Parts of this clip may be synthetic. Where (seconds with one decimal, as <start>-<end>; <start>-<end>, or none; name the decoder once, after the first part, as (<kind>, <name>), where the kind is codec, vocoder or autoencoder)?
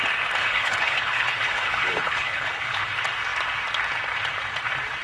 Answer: 0.4-2.9 (codec, HILCodec)